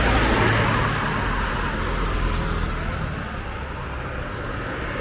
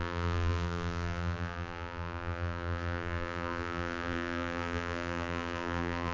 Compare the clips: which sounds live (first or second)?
first